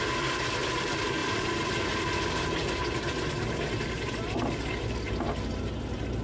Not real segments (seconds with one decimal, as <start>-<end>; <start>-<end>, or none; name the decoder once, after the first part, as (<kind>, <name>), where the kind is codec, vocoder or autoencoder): none